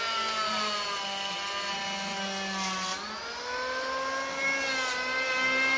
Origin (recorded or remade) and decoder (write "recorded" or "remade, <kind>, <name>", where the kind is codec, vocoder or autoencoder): recorded